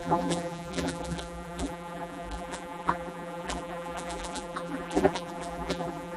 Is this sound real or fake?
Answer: fake